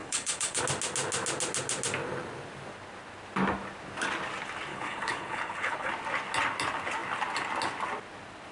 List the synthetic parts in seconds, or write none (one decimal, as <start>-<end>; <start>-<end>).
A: 0.0-0.6; 4.7-5.9

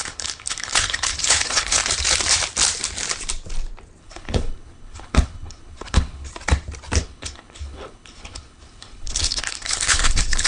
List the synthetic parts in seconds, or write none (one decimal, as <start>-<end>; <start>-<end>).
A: 0.0-1.8; 4.0-6.3; 7.0-10.5

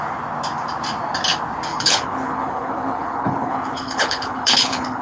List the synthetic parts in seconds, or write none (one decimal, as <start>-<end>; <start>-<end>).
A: 1.7-5.0

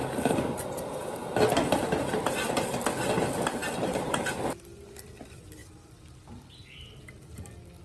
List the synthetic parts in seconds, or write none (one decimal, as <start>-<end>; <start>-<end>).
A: none

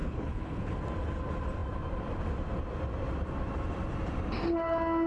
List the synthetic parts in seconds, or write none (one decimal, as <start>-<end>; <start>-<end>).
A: 0.0-0.8

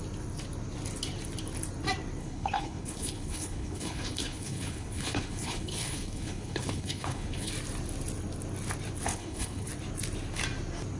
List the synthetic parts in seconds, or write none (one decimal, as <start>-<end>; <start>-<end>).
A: 2.2-7.5; 9.1-9.7

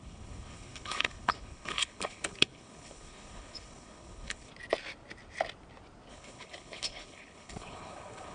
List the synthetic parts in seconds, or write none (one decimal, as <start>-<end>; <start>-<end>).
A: 0.0-4.5; 6.1-8.3